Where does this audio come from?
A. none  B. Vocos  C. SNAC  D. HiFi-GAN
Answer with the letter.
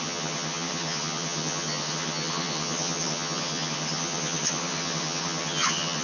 D